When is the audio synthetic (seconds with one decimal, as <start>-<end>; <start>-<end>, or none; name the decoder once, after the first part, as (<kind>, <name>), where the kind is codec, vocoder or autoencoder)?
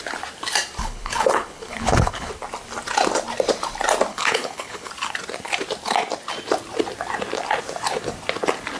0.8-2.3 (codec, HILCodec); 4.1-4.9